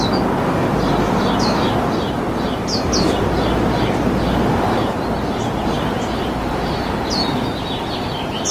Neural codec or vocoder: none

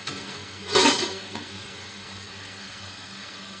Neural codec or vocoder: codec, SNAC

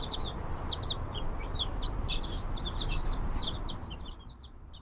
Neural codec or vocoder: vocoder, BigVGAN v2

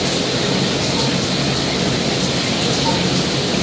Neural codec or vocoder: none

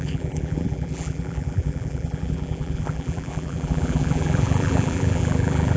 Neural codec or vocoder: vocoder, BigVGAN v2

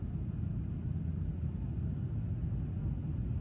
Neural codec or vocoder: none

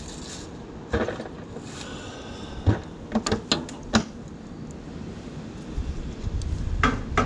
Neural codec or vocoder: none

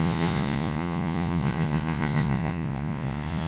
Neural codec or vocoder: vocoder, Vocos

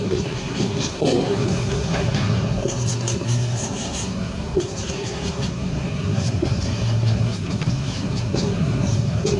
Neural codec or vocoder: codec, SNAC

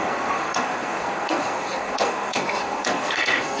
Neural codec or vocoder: codec, SNAC